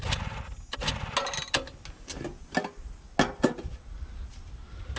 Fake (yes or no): no